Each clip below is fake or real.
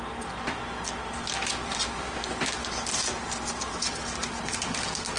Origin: real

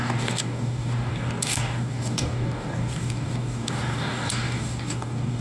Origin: fake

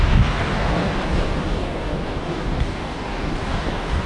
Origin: fake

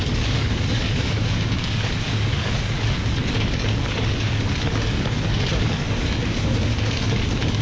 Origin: fake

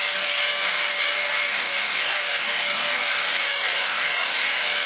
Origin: fake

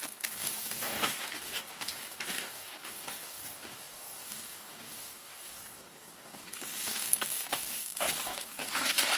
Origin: fake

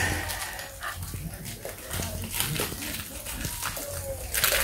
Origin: real